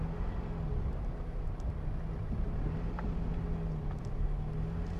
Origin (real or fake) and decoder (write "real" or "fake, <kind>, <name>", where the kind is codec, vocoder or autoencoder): real